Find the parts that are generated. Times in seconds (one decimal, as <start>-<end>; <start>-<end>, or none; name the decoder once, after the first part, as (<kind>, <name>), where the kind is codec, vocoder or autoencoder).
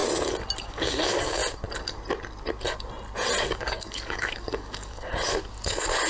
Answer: 0.6-1.4 (codec, DAC); 3.5-5.1